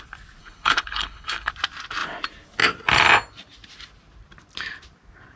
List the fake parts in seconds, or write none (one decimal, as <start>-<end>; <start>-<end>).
0.4-1.5

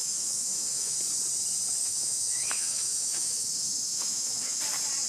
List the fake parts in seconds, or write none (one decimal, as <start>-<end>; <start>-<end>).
0.0-1.0; 1.8-4.6